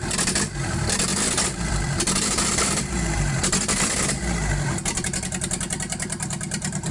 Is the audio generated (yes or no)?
yes